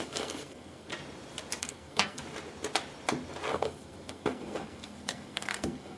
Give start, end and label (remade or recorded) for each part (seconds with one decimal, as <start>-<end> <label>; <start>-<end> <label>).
0.0-0.9 remade; 0.9-1.6 recorded; 1.6-2.2 remade; 2.2-3.5 recorded; 3.5-6.0 remade